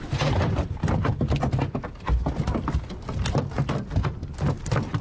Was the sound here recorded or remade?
recorded